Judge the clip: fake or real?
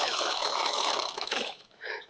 fake